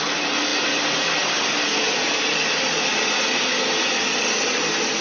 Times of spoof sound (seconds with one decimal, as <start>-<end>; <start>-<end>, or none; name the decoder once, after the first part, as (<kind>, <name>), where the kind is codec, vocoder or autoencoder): none